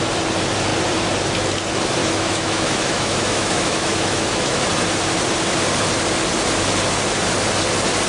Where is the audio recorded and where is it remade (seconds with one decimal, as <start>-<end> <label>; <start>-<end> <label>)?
0.0-2.0 recorded; 2.0-4.6 remade; 4.6-8.1 recorded